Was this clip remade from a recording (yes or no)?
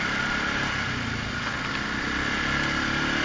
no